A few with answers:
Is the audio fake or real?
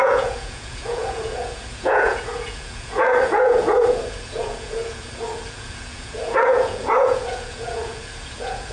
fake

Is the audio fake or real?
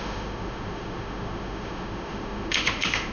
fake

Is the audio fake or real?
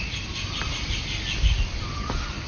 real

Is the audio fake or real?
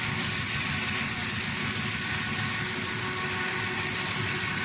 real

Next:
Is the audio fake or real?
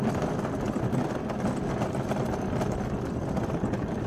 real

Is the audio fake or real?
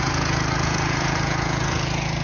fake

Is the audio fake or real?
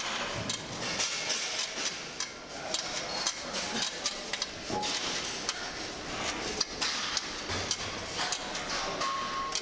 real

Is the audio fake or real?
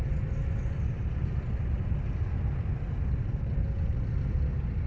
real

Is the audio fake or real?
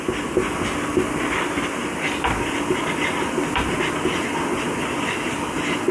real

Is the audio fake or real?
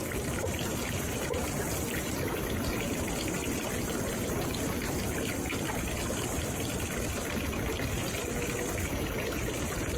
real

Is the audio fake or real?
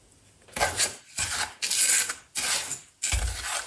real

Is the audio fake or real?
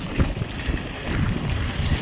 real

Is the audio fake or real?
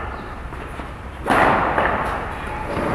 real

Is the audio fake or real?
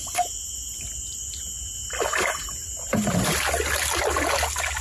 real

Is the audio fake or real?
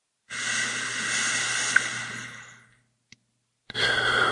real